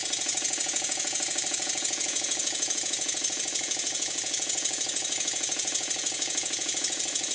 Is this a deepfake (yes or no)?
yes